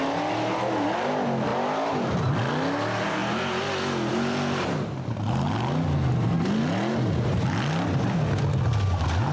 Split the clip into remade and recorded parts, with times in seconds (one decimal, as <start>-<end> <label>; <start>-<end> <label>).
0.0-9.3 recorded